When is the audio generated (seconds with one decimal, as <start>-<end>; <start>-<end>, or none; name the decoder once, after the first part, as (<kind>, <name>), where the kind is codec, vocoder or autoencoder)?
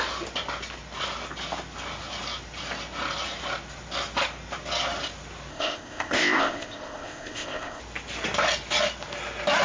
5.5-7.8 (codec, ZipCodec)